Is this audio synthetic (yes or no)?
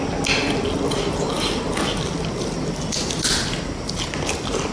no